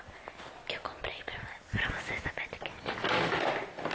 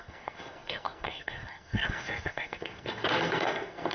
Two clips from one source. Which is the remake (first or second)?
second